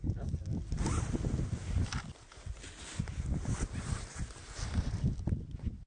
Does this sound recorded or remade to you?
recorded